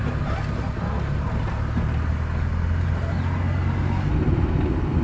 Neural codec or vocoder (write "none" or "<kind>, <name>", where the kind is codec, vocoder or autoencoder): none